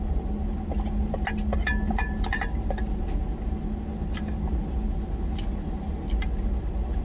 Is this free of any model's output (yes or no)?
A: yes